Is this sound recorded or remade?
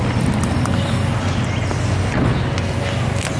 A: recorded